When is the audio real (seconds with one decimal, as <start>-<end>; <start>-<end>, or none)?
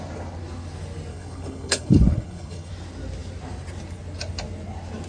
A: 0.0-1.1; 2.7-5.1